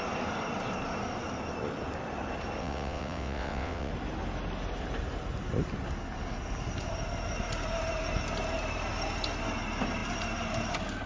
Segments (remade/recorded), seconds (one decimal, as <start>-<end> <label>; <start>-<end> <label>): 0.0-2.6 recorded; 2.6-3.9 remade; 3.9-11.1 recorded